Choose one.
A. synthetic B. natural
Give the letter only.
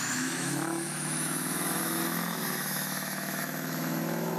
A